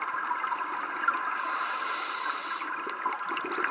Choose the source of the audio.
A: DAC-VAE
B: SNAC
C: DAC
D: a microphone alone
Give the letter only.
D